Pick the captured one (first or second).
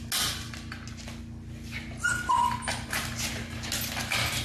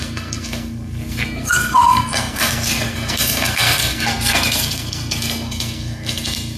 first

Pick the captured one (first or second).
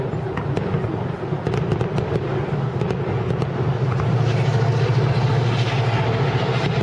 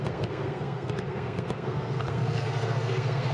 first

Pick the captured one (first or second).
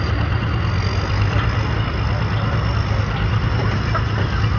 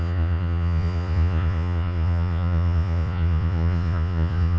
first